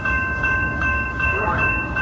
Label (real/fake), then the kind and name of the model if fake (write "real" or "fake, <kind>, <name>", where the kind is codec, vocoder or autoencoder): fake, codec, DAC